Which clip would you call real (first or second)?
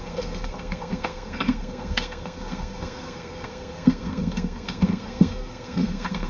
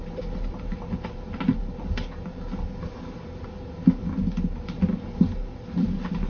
second